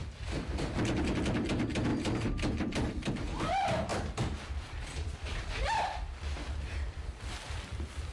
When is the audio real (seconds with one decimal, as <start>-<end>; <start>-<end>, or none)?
0.0-1.9; 2.9-3.9